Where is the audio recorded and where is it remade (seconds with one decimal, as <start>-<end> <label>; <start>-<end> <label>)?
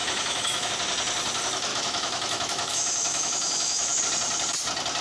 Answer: 0.0-0.7 remade; 0.7-1.7 recorded; 1.7-4.0 remade; 4.0-5.0 recorded